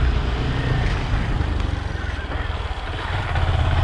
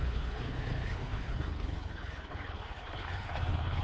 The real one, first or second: first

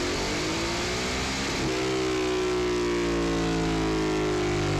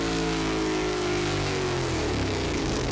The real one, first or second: first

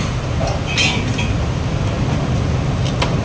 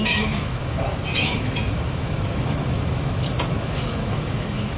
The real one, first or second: first